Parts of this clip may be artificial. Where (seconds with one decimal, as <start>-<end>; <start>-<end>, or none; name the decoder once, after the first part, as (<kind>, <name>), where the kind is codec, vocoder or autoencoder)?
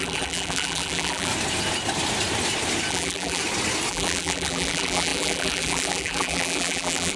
0.0-1.3 (vocoder, BigVGAN v2); 2.9-3.4; 3.9-7.2